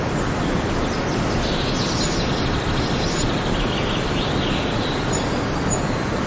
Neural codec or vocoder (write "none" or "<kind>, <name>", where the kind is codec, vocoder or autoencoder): none